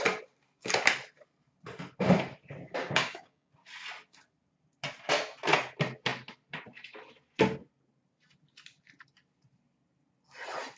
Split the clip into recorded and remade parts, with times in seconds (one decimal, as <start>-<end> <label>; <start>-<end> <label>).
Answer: 0.0-2.8 recorded; 2.8-3.5 remade; 3.5-10.8 recorded